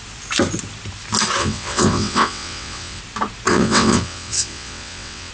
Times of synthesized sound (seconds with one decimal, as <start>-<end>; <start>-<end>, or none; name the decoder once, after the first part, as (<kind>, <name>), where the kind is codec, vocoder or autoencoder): 1.4-3.0 (vocoder, WaveNeXt); 3.5-5.3